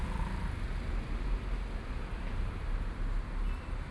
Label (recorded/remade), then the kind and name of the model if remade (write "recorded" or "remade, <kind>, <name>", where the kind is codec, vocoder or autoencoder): recorded